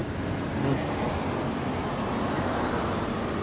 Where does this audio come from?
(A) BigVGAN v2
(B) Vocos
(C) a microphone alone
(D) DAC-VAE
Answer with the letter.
C